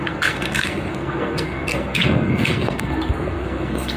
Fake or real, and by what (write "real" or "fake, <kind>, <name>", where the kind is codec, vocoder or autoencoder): fake, codec, SNAC